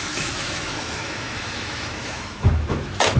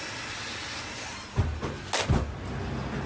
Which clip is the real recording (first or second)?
second